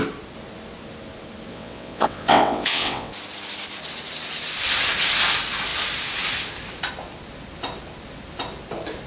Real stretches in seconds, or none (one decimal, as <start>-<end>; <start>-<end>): 0.0-1.5; 3.1-9.1